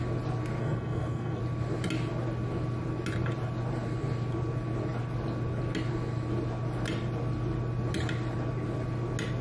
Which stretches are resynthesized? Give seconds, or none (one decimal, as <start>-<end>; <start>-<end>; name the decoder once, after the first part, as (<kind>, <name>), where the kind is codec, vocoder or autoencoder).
0.6-1.4 (codec, SNAC)